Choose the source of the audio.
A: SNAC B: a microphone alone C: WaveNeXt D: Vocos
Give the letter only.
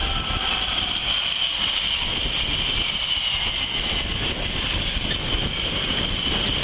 B